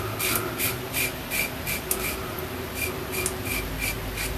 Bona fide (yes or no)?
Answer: yes